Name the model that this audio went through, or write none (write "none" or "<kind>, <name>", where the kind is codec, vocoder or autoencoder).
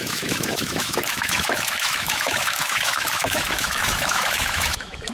autoencoder, DAC-VAE